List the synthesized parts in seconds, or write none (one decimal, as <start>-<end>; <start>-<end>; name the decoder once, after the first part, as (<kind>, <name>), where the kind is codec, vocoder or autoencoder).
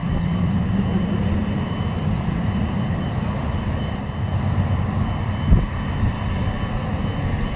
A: 0.0-0.6 (vocoder, BigVGAN v2); 1.4-4.0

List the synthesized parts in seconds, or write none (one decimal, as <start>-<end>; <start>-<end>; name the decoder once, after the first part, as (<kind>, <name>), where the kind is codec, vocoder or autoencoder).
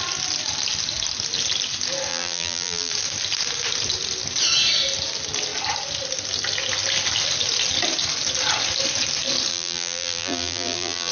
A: 2.1-2.9 (vocoder, BigVGAN v2); 9.5-11.1